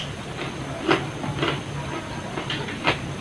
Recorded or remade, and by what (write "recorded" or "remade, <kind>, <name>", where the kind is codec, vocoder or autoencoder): recorded